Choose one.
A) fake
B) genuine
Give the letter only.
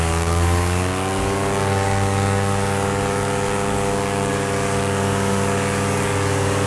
A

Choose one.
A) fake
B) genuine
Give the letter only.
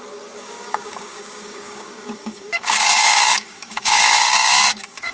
A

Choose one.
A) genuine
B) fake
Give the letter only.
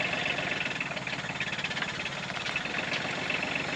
A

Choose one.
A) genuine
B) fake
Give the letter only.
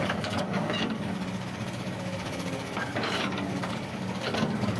B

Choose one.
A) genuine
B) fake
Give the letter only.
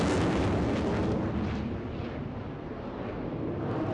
A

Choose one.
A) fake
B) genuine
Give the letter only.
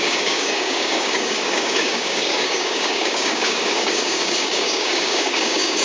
A